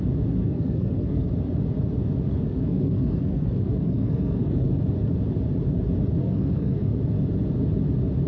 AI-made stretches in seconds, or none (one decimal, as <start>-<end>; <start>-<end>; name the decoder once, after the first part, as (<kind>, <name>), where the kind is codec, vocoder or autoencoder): 0.4-1.3 (codec, SNAC); 2.3-4.7; 6.2-7.0